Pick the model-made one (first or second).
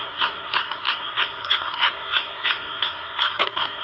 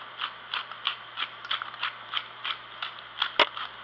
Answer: first